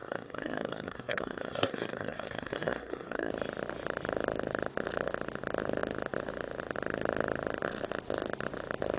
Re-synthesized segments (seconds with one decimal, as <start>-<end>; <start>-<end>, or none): 0.0-3.3